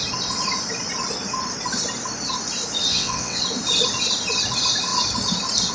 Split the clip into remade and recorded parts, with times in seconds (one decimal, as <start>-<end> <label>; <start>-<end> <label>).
0.0-2.9 recorded; 2.9-3.4 remade; 3.4-5.7 recorded